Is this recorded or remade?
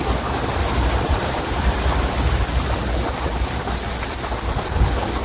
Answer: recorded